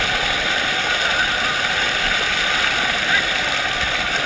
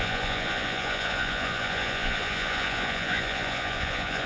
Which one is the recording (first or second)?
first